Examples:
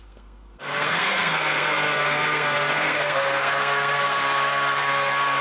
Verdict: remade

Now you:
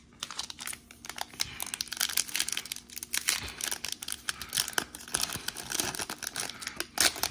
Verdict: recorded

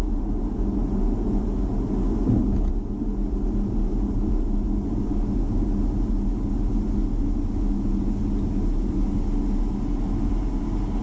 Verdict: recorded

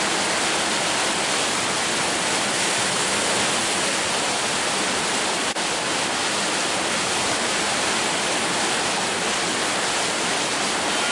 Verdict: recorded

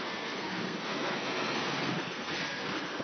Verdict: remade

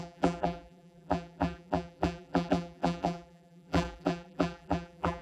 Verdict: remade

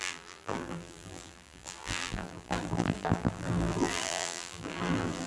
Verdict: remade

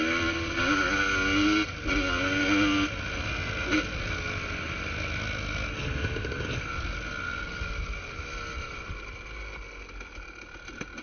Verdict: recorded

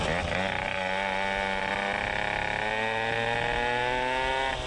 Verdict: recorded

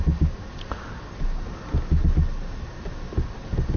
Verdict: recorded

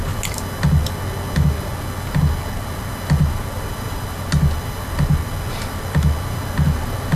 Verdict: recorded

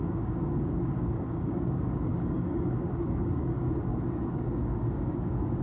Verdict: remade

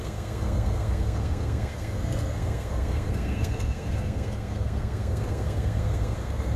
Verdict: remade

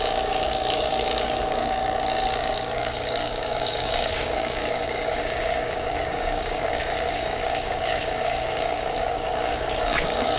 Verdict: remade